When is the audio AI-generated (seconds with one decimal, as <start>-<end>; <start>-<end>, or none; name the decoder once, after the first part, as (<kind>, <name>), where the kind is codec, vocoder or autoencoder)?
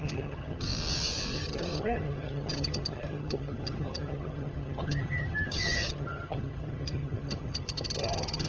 0.0-0.7 (vocoder, HiFi-GAN); 1.3-8.5